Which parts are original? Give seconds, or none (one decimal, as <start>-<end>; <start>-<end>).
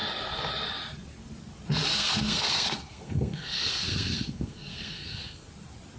0.0-1.9; 5.5-6.0